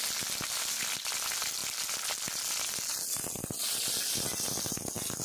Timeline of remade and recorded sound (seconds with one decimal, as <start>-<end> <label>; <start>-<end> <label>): 0.0-5.2 recorded